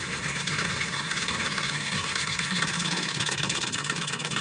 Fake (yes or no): yes